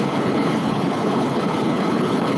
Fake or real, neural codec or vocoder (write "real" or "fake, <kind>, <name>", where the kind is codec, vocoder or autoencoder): fake, codec, HILCodec